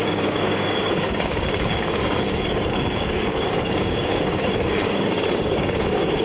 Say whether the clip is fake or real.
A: fake